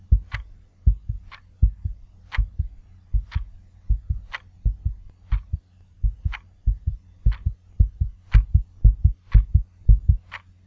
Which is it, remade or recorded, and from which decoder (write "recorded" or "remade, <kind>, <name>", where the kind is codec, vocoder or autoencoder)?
recorded